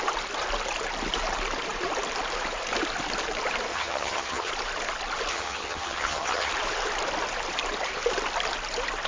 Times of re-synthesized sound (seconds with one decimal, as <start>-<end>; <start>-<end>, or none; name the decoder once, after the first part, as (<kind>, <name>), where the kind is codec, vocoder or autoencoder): 3.7-4.5 (vocoder, HiFi-GAN); 5.3-6.5